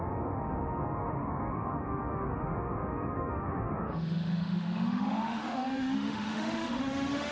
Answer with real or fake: fake